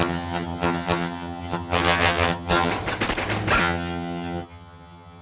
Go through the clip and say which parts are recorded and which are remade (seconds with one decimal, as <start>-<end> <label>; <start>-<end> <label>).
0.0-2.7 remade; 2.7-3.6 recorded; 3.6-5.2 remade